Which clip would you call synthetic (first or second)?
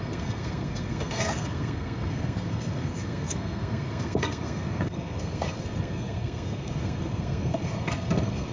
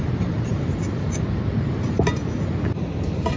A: first